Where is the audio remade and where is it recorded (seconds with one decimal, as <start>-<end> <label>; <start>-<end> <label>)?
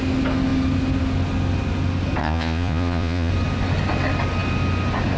0.0-2.2 recorded; 2.2-3.3 remade; 3.3-5.2 recorded